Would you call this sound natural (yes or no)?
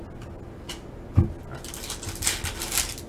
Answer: yes